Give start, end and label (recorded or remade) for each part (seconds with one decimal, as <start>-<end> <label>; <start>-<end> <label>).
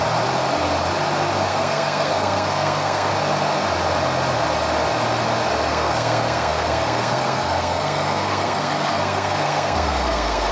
0.0-1.5 recorded; 1.5-3.1 remade; 3.1-5.7 recorded; 5.7-10.5 remade